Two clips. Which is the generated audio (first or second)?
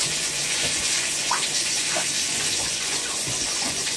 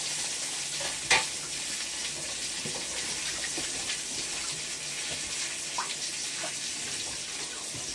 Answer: first